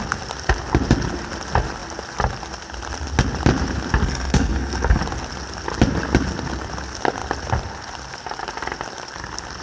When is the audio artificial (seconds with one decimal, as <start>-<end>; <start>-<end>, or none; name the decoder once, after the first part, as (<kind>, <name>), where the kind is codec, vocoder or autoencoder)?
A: 4.0-5.0 (codec, SNAC)